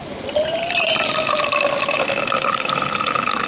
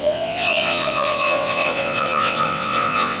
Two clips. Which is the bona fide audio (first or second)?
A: first